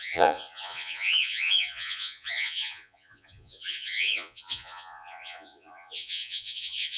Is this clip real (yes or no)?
no